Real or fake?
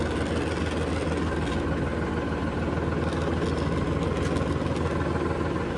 real